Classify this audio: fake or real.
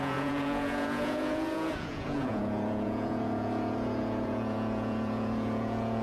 fake